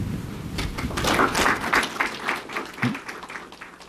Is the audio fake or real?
real